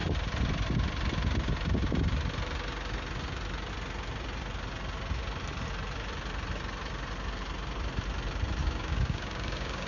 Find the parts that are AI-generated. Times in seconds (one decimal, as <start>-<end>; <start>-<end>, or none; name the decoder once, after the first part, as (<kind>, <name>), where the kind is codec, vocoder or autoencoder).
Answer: 8.6-9.9 (codec, DAC)